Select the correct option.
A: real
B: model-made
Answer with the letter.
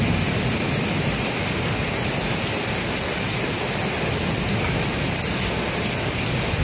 A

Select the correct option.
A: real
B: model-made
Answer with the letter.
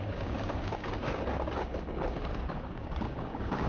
B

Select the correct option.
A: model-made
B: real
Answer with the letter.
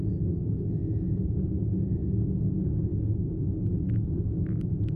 B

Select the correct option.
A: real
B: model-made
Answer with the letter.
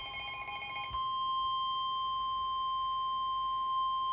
A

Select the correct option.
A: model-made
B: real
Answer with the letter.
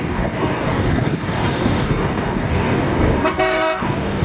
A